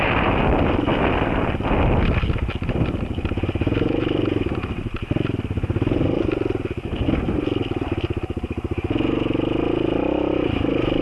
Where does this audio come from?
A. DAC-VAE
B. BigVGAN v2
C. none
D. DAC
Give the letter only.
C